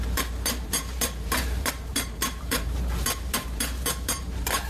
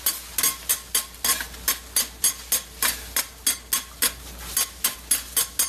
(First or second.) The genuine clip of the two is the second